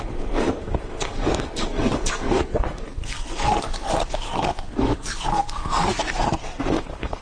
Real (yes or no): no